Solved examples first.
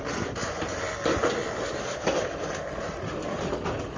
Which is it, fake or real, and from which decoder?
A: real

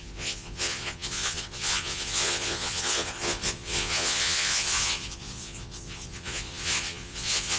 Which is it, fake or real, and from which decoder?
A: fake, vocoder, Vocos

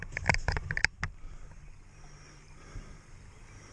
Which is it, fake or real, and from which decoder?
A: real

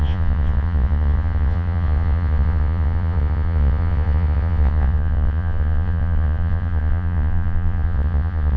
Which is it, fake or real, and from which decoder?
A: fake, vocoder, Vocos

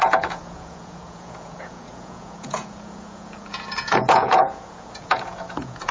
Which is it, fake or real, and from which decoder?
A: fake, vocoder, Vocos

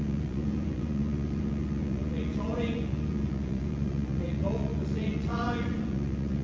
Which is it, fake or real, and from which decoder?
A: fake, vocoder, Vocos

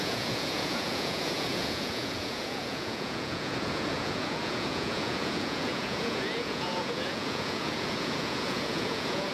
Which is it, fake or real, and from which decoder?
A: fake, vocoder, Vocos